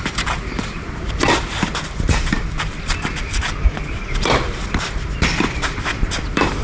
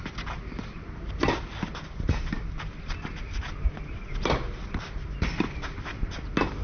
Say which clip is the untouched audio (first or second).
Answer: second